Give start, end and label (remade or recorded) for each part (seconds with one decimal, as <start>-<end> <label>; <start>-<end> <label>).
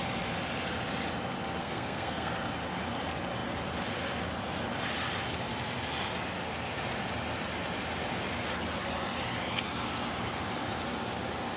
0.0-1.6 recorded; 1.6-2.3 remade; 2.3-11.6 recorded